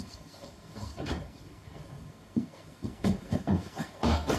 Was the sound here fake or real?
fake